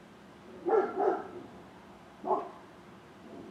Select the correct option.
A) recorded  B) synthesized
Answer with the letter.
A